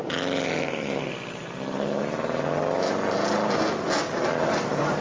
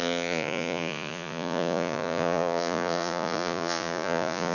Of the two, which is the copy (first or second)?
second